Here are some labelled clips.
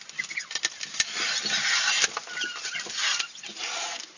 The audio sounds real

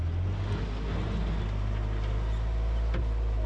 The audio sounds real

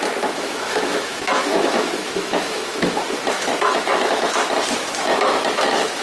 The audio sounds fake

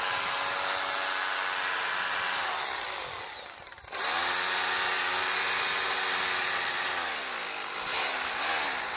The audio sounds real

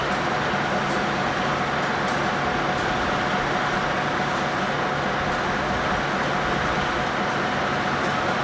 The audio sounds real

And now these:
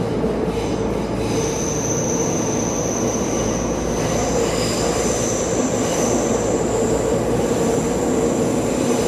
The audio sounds real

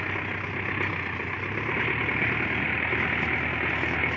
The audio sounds real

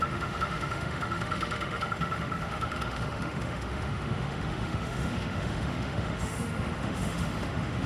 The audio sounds fake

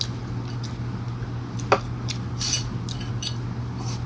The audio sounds real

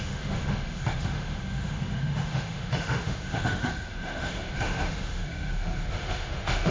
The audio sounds fake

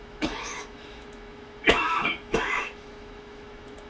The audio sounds fake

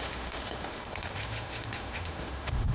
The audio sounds fake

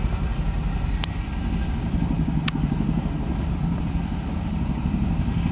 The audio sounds real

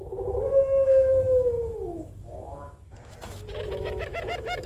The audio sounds fake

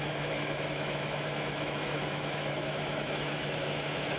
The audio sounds fake